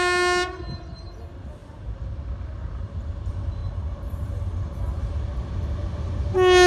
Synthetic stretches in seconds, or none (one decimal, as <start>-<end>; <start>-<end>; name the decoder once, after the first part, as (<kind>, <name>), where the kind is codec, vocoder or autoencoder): 3.6-5.0 (vocoder, BigVGAN v2)